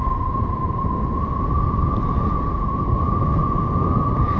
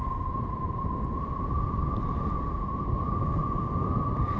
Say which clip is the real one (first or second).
first